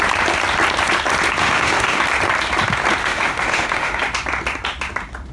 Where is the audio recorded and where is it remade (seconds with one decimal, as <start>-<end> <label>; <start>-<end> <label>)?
0.0-1.4 recorded; 1.4-2.0 remade; 2.0-3.0 recorded; 3.0-4.0 remade; 4.0-5.3 recorded